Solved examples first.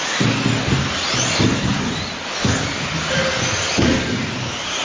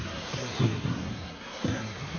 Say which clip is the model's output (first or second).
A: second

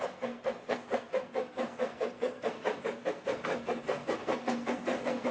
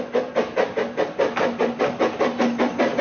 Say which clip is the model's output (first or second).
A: first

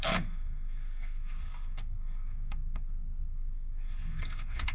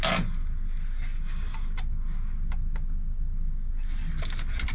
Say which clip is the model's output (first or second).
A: first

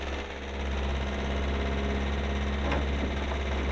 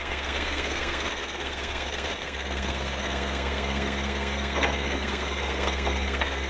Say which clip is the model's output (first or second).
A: second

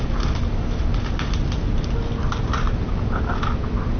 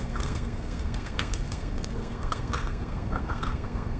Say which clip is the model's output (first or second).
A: second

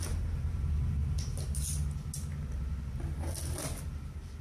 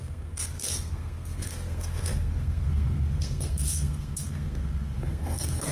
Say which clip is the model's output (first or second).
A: second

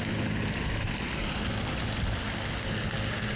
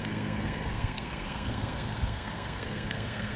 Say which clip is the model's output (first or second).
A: second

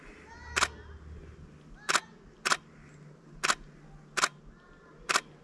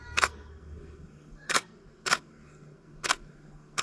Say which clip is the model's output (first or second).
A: second